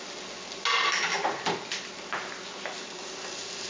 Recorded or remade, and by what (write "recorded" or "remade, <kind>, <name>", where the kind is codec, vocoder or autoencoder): recorded